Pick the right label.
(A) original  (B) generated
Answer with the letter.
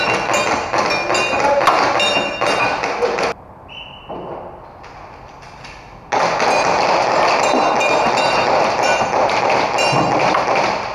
A